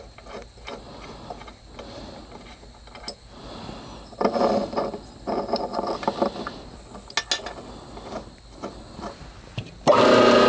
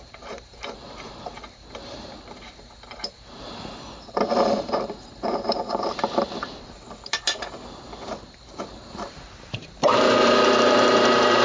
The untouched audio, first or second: first